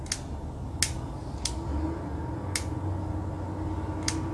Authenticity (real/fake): real